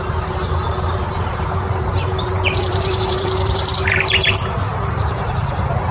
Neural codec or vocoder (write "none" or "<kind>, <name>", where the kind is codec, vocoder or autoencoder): vocoder, BigVGAN v2